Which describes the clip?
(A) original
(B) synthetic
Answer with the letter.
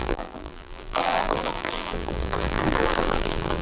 B